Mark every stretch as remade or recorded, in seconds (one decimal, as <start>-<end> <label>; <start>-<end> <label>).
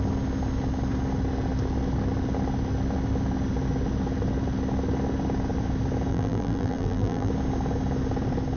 0.0-6.1 recorded; 6.1-7.3 remade; 7.3-8.6 recorded